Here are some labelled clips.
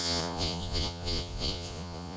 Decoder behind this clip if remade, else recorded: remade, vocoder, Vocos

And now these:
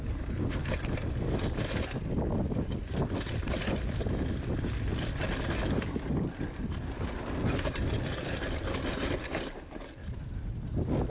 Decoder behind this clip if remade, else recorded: recorded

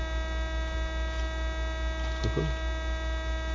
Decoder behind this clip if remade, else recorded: recorded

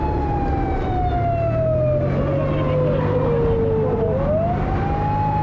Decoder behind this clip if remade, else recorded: recorded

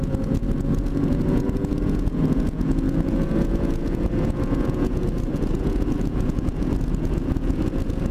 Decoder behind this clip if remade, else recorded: remade, vocoder, Vocos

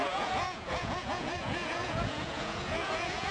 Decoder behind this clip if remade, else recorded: remade, vocoder, Vocos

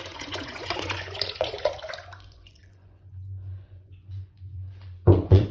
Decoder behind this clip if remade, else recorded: remade, vocoder, Vocos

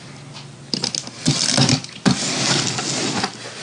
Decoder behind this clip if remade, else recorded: recorded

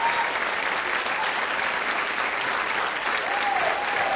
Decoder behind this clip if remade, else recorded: recorded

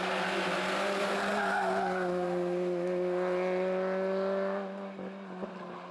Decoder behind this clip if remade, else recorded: recorded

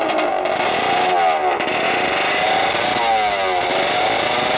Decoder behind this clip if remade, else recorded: recorded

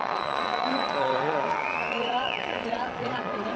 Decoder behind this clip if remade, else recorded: remade, vocoder, Vocos